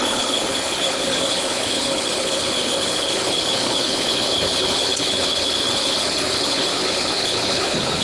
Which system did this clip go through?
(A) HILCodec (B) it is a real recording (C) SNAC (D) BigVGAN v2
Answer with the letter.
A